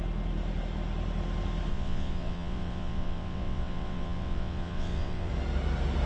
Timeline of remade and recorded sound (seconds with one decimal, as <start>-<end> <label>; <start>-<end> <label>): 0.0-1.7 recorded; 1.7-5.3 remade; 5.3-6.1 recorded

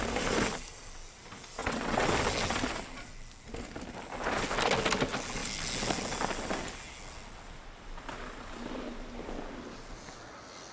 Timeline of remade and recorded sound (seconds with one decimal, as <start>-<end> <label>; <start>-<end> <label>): 0.0-1.6 recorded; 1.6-2.1 remade; 2.1-10.7 recorded